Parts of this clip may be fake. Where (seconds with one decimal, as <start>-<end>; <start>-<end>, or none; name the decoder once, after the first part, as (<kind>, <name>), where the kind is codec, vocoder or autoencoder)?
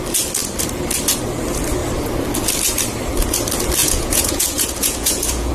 3.8-5.5 (vocoder, Vocos)